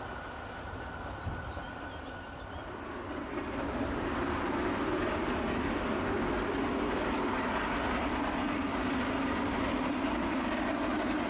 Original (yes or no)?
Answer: yes